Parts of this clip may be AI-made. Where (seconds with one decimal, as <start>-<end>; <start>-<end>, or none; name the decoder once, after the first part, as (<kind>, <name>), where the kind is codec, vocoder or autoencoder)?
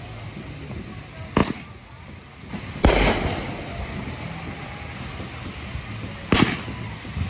none